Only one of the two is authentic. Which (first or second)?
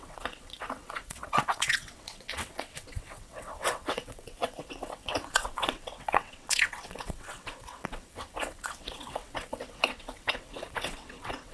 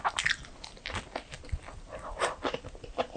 second